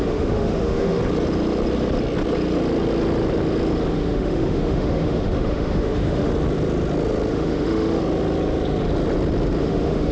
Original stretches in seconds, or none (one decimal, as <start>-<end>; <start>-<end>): 1.0-3.9; 6.3-7.3; 8.0-9.6